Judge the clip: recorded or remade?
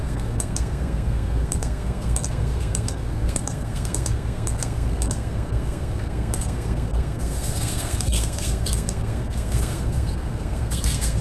remade